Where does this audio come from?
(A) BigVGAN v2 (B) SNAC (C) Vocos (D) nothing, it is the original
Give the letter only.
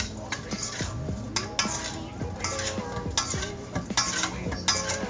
D